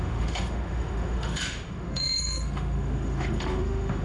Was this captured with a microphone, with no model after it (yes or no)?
no